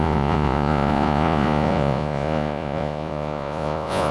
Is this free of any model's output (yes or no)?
no